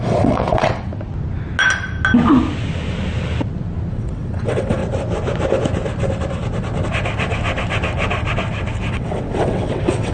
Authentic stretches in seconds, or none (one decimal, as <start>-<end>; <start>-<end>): 0.9-3.9; 4.8-8.9